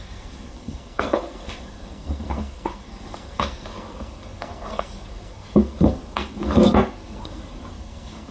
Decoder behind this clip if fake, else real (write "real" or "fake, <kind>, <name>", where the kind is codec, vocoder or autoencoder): fake, codec, SNAC